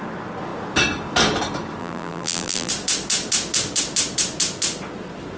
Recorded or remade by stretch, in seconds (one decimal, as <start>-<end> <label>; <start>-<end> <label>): 0.0-1.8 recorded; 1.8-2.7 remade; 2.7-5.4 recorded